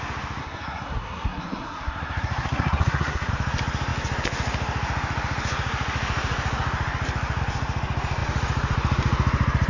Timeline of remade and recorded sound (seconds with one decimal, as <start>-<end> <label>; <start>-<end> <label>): 0.0-0.4 recorded; 0.4-3.3 remade; 3.3-9.7 recorded